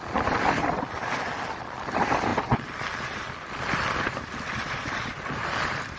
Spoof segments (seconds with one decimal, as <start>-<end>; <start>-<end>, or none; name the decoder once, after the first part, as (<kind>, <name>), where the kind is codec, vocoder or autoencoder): none